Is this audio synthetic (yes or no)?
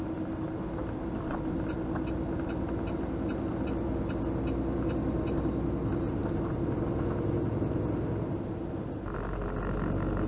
no